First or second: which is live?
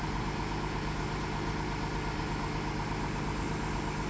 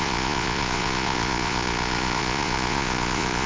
first